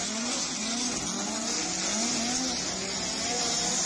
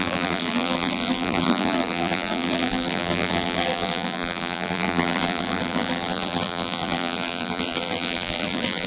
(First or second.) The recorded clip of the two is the first